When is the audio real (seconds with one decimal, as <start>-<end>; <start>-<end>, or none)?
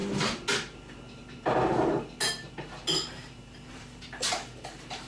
0.0-3.1